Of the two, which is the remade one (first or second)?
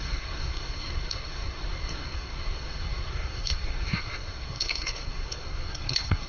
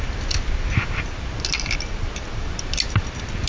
first